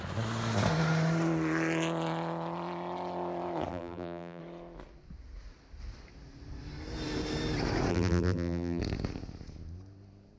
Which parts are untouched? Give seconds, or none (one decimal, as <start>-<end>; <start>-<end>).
0.0-3.7; 4.4-7.9; 8.8-10.4